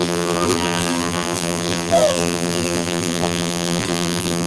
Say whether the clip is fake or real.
fake